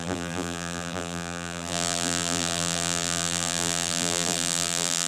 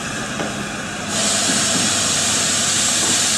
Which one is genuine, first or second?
second